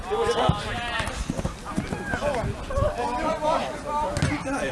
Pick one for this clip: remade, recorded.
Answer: recorded